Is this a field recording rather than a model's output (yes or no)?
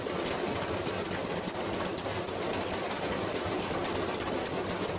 no